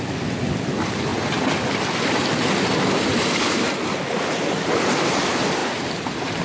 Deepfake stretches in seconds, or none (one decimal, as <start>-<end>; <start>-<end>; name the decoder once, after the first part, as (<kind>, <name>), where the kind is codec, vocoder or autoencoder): none